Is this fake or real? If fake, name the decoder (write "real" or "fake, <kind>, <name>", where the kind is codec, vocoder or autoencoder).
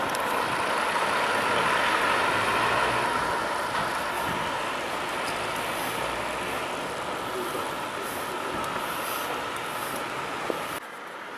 real